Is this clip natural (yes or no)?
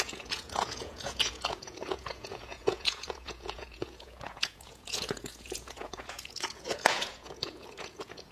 no